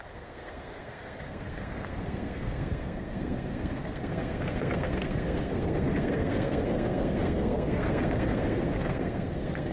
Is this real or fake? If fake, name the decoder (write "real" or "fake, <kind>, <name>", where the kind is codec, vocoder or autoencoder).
fake, codec, SNAC